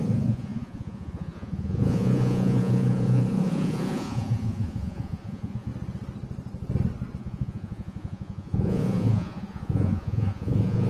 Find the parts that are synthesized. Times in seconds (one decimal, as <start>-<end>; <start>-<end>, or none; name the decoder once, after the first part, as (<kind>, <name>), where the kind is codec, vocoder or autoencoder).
0.0-5.7 (vocoder, Vocos); 7.2-10.9